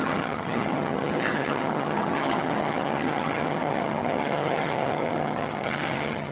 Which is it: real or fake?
fake